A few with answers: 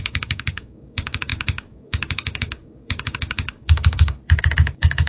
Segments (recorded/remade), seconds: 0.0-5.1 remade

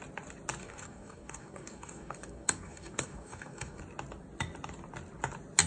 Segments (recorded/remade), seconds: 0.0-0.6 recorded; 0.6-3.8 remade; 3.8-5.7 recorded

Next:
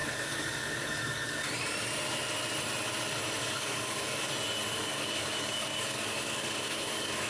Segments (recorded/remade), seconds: 0.0-1.5 remade; 1.5-3.4 recorded; 3.4-4.3 remade; 4.3-4.7 recorded; 4.7-7.3 remade

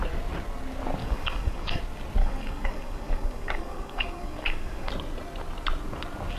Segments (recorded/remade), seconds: 0.0-1.0 recorded; 1.0-1.8 remade; 1.8-2.2 recorded; 2.2-4.9 remade; 4.9-6.4 recorded

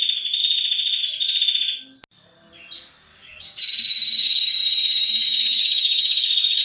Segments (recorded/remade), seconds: 0.0-3.1 recorded; 3.1-6.6 remade

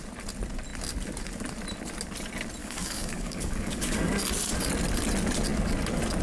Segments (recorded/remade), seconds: 0.0-2.6 recorded; 2.6-4.1 remade; 4.1-6.2 recorded